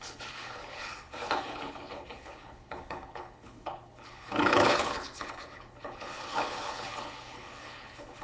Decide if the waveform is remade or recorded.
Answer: remade